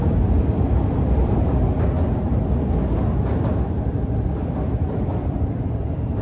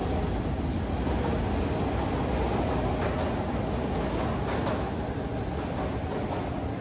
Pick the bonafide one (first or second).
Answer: second